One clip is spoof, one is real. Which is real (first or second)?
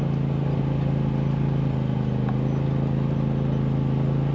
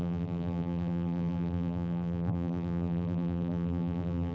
first